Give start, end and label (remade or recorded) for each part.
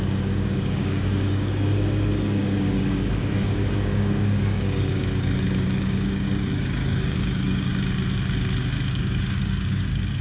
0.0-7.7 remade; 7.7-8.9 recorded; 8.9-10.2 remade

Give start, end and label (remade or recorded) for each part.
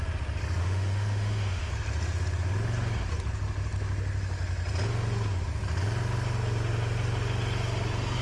0.0-0.6 recorded; 0.6-1.7 remade; 1.7-8.2 recorded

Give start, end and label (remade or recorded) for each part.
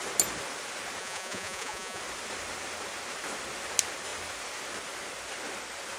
0.0-1.0 recorded; 1.0-2.0 remade; 2.0-6.0 recorded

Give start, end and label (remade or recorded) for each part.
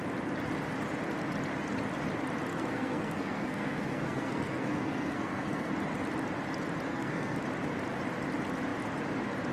0.0-2.5 recorded; 2.5-5.7 remade; 5.7-6.9 recorded; 6.9-7.4 remade; 7.4-9.5 recorded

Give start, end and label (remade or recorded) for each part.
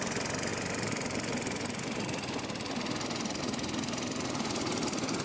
0.0-5.2 recorded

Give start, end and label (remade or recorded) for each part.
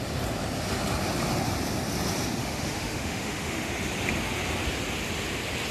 0.0-2.4 recorded; 2.4-3.7 remade; 3.7-5.7 recorded